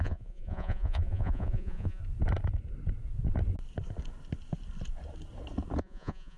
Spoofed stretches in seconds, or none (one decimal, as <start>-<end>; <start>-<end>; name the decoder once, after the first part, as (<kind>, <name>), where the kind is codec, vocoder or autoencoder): 0.0-2.0 (vocoder, Vocos); 5.8-6.4